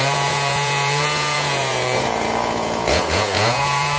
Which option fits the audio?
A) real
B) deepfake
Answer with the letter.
B